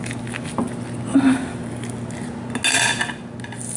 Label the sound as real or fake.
real